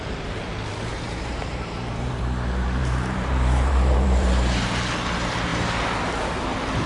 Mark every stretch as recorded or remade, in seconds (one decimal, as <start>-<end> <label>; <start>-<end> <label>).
0.0-0.9 recorded; 0.9-2.2 remade; 2.2-2.8 recorded; 2.8-4.7 remade; 4.7-6.9 recorded